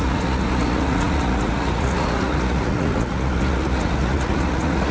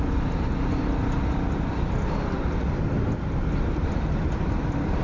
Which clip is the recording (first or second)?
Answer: second